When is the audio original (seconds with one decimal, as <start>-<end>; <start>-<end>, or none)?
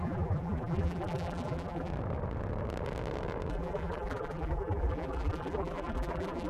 1.9-3.5